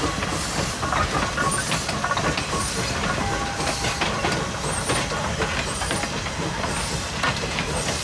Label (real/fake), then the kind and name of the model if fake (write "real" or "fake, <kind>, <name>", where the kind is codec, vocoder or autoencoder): real